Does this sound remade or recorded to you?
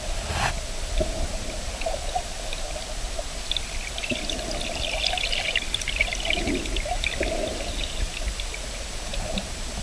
recorded